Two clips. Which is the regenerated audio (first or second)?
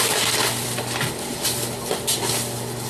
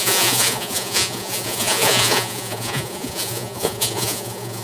second